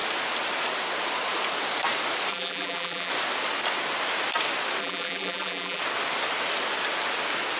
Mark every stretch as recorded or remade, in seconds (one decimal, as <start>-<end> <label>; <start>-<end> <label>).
0.0-2.3 recorded; 2.3-3.1 remade; 3.1-4.8 recorded; 4.8-5.8 remade; 5.8-7.6 recorded